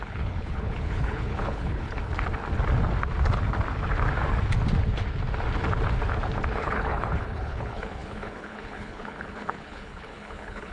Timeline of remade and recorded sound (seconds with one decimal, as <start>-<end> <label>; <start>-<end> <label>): 0.0-2.0 remade; 2.0-6.5 recorded; 6.5-10.7 remade